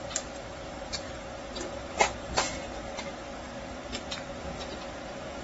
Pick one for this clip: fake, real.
real